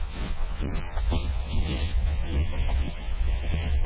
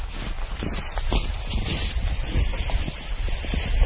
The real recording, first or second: second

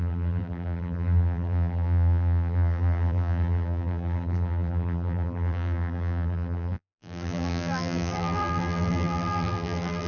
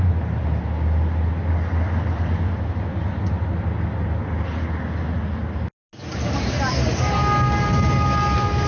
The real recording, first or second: second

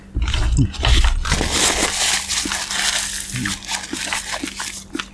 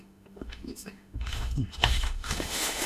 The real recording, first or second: first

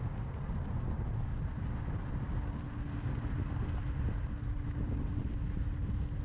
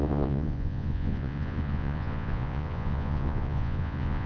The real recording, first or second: first